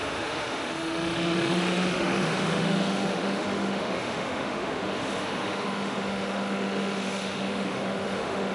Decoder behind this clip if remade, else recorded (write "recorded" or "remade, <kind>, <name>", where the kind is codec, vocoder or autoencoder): remade, autoencoder, DAC-VAE